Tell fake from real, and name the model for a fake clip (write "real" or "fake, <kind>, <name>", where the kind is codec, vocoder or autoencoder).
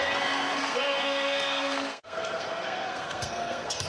fake, codec, SNAC